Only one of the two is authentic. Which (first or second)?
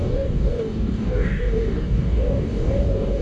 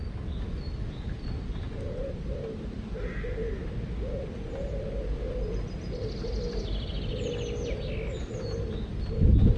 second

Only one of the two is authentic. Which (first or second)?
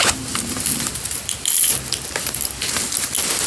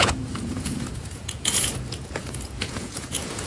first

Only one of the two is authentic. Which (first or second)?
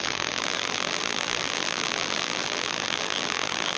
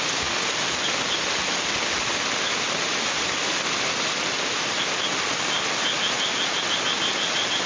second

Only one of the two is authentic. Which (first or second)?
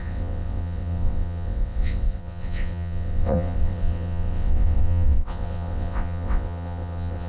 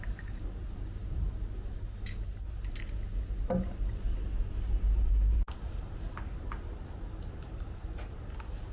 second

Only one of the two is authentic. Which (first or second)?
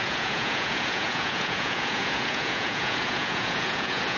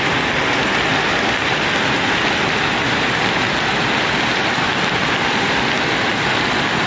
second